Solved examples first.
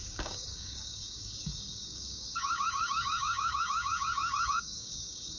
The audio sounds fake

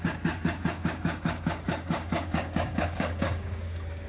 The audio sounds fake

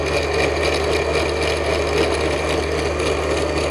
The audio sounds real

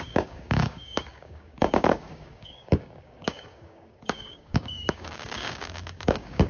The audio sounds fake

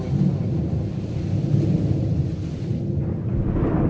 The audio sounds real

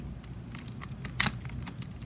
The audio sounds real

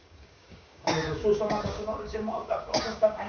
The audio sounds fake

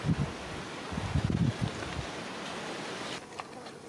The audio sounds real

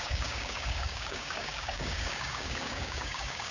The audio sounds fake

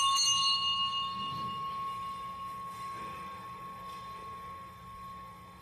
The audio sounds fake